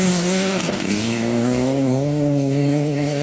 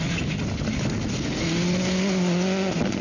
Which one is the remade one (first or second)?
first